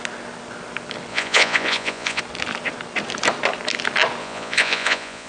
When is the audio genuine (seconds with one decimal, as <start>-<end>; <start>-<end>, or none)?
0.0-1.1; 2.2-4.2